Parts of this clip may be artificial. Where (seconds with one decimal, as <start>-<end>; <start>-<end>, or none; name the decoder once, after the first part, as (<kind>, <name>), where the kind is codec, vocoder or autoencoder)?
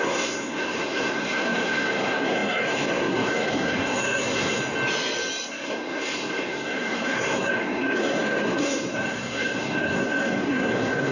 0.0-4.6 (codec, SNAC); 5.5-11.1